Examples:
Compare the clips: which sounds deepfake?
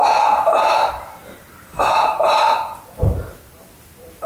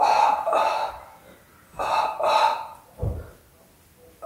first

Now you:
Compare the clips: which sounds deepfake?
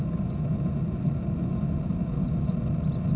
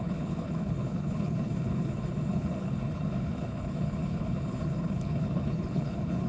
second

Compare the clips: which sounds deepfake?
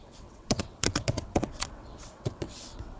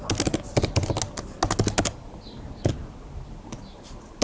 first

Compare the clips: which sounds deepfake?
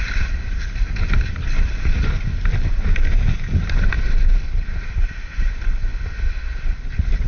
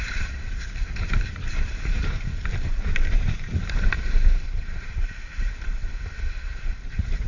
second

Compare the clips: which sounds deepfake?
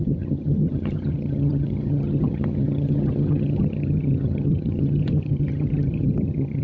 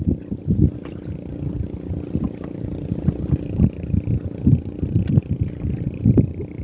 first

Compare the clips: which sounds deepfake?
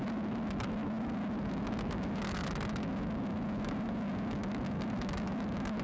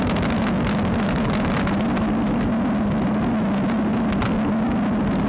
first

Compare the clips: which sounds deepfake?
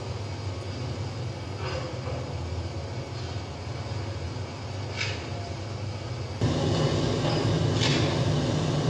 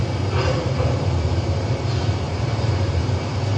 second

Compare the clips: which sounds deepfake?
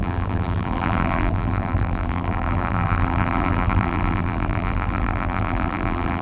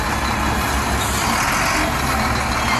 first